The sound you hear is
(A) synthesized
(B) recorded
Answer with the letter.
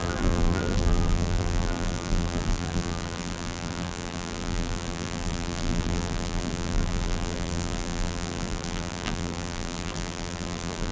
A